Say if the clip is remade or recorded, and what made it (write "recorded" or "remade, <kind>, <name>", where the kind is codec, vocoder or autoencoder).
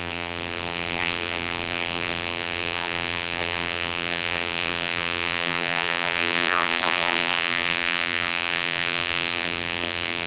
remade, vocoder, BigVGAN v2